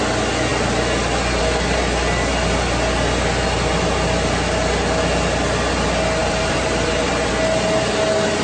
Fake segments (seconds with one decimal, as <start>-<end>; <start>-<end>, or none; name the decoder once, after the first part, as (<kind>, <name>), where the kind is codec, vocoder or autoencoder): 6.2-7.3 (vocoder, BigVGAN v2)